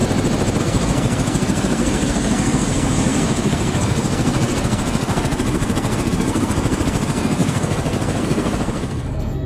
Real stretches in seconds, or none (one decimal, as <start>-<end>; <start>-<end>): 0.0-0.6